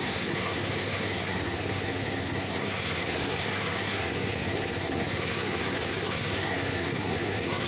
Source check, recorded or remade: remade